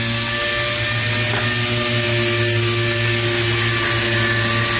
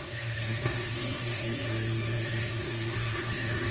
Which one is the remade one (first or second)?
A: second